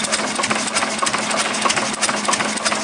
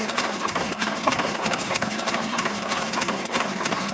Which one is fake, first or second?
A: second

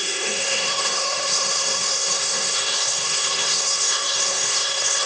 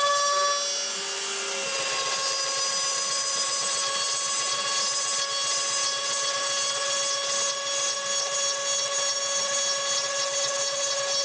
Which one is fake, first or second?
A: first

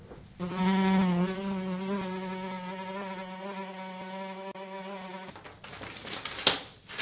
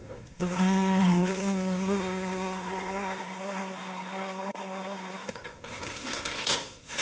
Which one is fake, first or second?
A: second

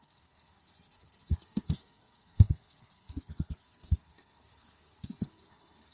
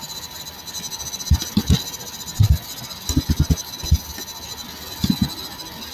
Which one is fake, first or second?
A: first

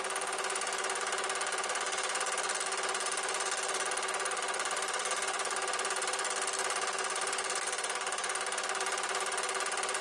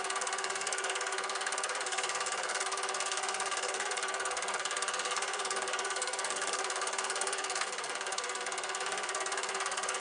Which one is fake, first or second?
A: second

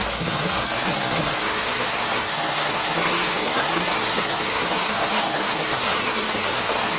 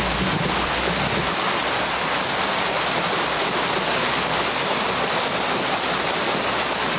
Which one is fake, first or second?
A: first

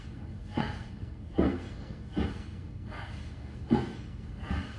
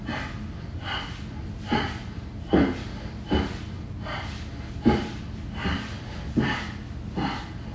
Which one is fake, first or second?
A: first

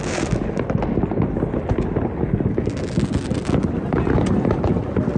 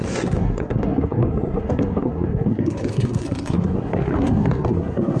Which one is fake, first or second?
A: second